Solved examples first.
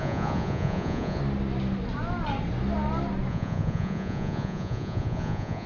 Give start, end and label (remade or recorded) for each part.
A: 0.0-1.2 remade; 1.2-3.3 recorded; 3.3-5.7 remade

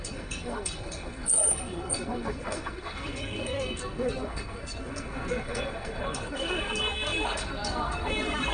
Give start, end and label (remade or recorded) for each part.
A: 0.0-8.5 remade